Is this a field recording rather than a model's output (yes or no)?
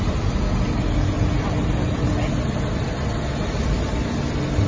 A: yes